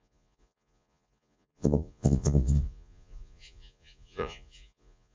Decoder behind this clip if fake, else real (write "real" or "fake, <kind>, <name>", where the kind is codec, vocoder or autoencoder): fake, vocoder, Vocos